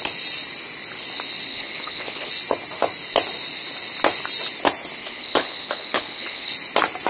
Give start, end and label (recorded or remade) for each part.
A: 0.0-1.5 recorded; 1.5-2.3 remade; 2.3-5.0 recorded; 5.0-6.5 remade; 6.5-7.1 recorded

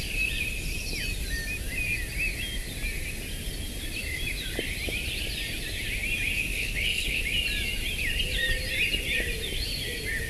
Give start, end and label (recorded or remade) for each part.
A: 0.0-6.5 recorded; 6.5-7.2 remade; 7.2-10.3 recorded

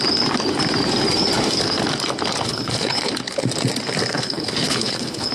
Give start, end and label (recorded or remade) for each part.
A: 0.0-2.5 recorded; 2.5-3.1 remade; 3.1-4.1 recorded; 4.1-5.3 remade

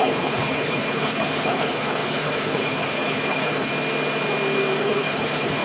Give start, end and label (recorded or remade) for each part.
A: 0.0-3.7 remade; 3.7-4.8 recorded; 4.8-5.6 remade

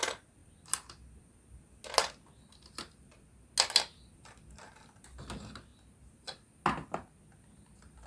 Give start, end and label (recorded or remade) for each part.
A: 0.0-8.1 recorded

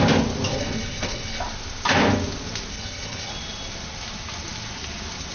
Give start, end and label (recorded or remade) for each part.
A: 0.0-0.5 recorded; 0.5-1.4 remade; 1.4-2.7 recorded; 2.7-3.3 remade; 3.3-5.3 recorded